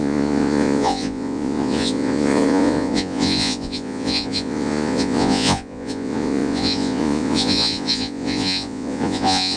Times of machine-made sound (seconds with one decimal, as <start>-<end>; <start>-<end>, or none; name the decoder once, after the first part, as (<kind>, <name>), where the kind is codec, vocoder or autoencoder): 0.0-9.6 (vocoder, Vocos)